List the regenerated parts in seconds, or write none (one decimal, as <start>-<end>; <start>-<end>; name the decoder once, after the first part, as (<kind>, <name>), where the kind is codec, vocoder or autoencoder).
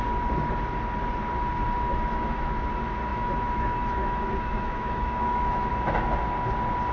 1.9-2.7 (autoencoder, DAC-VAE); 3.1-5.7